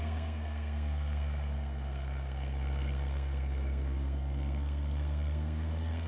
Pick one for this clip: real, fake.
fake